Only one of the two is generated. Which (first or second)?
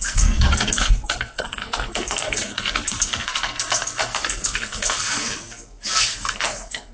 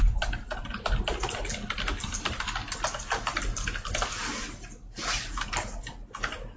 first